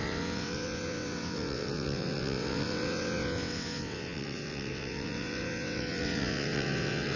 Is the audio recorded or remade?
remade